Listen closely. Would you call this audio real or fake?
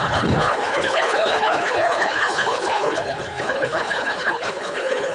fake